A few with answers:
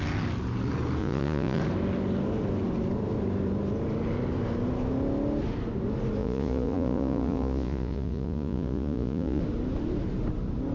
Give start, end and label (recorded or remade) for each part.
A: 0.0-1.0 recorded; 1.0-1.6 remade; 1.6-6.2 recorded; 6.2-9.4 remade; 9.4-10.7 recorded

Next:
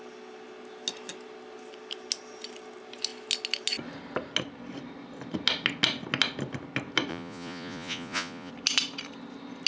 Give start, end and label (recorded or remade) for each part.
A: 0.0-7.1 recorded; 7.1-8.5 remade; 8.5-9.7 recorded